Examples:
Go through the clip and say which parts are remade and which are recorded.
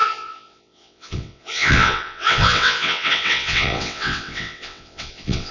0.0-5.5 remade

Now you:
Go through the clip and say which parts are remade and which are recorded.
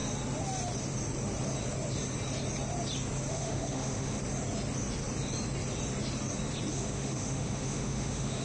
0.0-3.3 recorded; 3.3-4.2 remade; 4.2-6.7 recorded; 6.7-8.4 remade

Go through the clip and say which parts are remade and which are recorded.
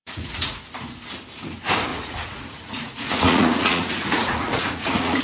0.0-0.6 remade; 0.6-1.9 recorded; 1.9-5.2 remade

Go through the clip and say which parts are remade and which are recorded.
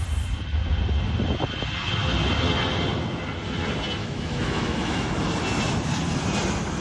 0.0-4.0 recorded; 4.0-5.1 remade; 5.1-6.8 recorded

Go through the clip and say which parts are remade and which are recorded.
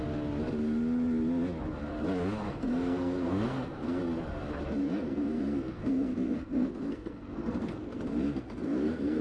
0.0-2.5 recorded; 2.5-4.0 remade; 4.0-4.8 recorded; 4.8-9.2 remade